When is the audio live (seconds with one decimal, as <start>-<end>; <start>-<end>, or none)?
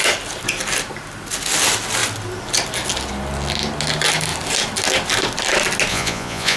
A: 0.0-5.9